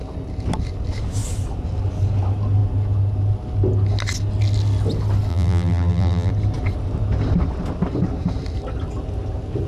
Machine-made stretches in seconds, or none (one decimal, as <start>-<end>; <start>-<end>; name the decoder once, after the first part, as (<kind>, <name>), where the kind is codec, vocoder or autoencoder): 5.3-6.3 (vocoder, BigVGAN v2)